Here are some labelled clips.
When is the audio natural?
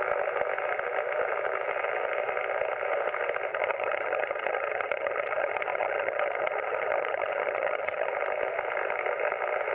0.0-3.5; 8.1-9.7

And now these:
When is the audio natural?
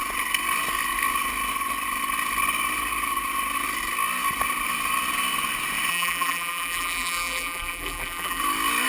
0.0-5.9; 8.4-8.9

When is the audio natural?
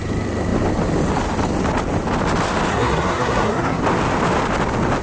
0.0-2.7; 3.8-5.0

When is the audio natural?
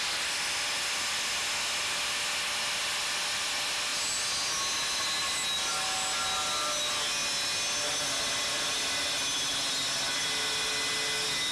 0.0-11.5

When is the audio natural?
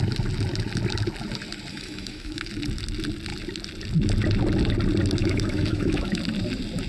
0.0-1.7; 2.5-5.2; 6.2-6.9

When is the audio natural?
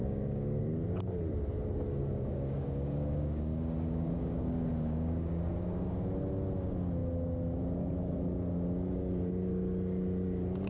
0.6-2.0; 5.5-10.7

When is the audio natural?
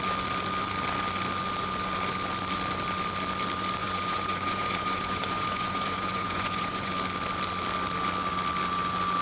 0.0-3.8; 6.9-9.2